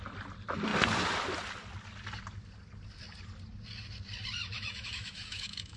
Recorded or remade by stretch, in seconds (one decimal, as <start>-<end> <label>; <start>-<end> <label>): 0.0-4.4 recorded; 4.4-5.8 remade